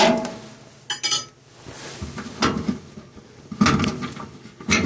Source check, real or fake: real